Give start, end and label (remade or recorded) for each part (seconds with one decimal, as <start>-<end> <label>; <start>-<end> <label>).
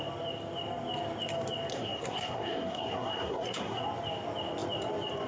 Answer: 0.0-1.7 recorded; 1.7-3.8 remade; 3.8-5.3 recorded